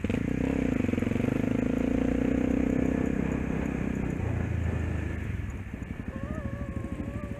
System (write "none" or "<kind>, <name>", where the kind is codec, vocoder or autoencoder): none